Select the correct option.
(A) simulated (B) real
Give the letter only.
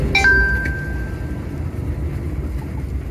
B